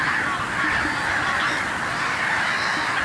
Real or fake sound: real